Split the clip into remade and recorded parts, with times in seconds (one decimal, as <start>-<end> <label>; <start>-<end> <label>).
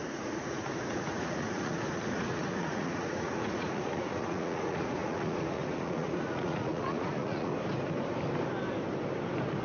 0.0-7.5 remade; 7.5-9.6 recorded